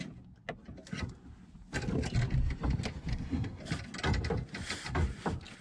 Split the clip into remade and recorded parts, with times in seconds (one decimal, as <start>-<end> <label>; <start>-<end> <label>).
0.0-3.1 recorded; 3.1-3.6 remade; 3.6-5.6 recorded